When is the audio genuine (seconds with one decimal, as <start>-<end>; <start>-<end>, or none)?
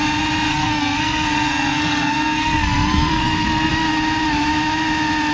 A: 0.0-0.5; 3.7-5.3